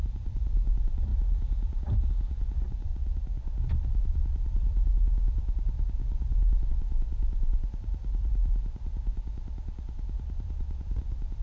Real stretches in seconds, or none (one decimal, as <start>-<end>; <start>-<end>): 2.9-3.6; 6.0-6.7

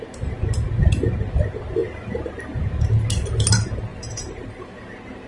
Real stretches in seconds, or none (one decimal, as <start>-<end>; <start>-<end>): 0.0-3.9; 4.7-5.3